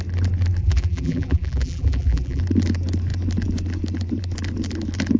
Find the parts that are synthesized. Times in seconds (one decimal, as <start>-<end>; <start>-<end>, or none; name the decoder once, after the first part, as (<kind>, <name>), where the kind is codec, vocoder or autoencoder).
0.6-2.4 (vocoder, BigVGAN v2)